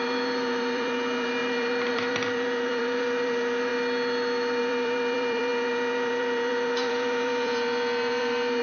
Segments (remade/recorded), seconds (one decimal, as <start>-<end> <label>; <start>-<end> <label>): 0.0-3.7 remade; 3.7-4.6 recorded; 4.6-8.6 remade